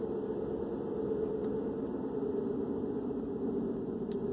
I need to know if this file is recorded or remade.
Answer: recorded